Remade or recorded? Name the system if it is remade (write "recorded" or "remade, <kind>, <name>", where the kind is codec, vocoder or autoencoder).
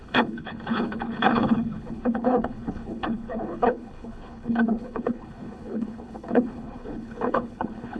remade, codec, HILCodec